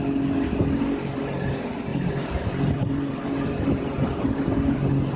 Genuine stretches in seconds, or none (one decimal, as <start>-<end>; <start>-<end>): 0.0-1.9